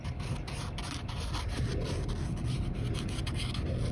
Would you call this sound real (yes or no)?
yes